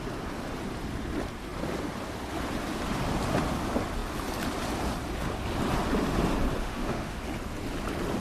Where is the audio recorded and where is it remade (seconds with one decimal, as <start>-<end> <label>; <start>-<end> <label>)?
0.0-6.6 recorded; 6.6-7.2 remade; 7.2-8.2 recorded